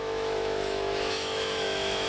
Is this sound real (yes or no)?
no